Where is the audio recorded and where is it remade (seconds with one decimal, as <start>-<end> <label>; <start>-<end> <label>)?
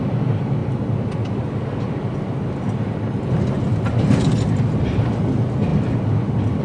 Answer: 0.0-6.6 recorded